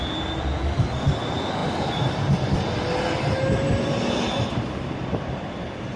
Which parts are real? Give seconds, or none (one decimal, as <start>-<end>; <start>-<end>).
0.0-6.0